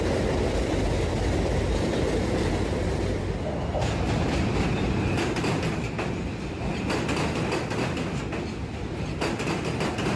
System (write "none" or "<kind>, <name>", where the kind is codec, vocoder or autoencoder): none